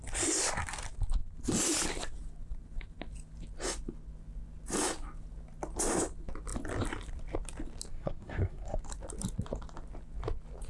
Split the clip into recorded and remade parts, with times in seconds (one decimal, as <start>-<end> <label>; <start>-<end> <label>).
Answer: 0.0-7.9 recorded; 7.9-8.8 remade; 8.8-10.7 recorded

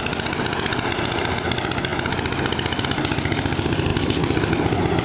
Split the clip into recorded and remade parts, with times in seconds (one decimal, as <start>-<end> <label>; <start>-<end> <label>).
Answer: 0.0-5.0 recorded

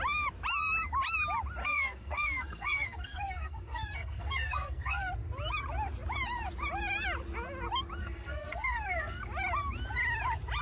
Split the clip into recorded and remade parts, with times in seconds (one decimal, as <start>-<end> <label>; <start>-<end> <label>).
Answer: 0.0-1.6 recorded; 1.6-5.1 remade; 5.1-8.0 recorded; 8.0-9.2 remade; 9.2-10.6 recorded

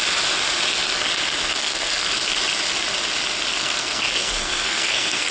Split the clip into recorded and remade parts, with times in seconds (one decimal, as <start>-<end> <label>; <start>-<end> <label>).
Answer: 0.0-1.5 recorded; 1.5-2.2 remade; 2.2-3.5 recorded; 3.5-5.3 remade

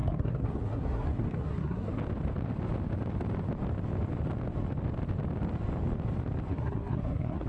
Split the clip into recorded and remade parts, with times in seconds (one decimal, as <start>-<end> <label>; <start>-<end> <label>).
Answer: 0.0-2.0 remade; 2.0-6.5 recorded; 6.5-7.5 remade